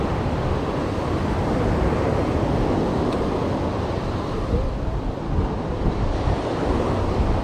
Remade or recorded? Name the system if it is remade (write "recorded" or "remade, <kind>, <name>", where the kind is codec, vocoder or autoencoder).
recorded